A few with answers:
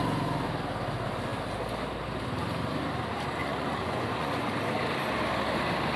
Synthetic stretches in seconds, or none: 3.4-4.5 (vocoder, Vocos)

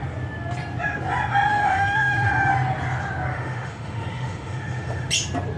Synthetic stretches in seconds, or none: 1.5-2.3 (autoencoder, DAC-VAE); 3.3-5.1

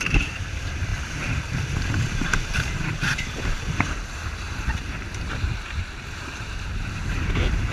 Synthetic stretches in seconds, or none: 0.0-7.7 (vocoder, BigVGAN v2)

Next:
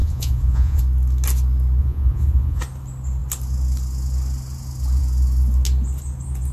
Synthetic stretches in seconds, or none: 0.0-0.8 (vocoder, Vocos); 1.8-2.6

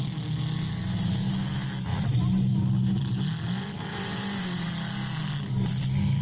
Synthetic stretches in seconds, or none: 3.9-4.7 (vocoder, BigVGAN v2)

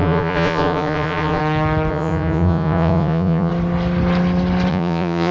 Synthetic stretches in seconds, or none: 0.0-1.4 (vocoder, Vocos); 1.9-3.5; 4.7-5.3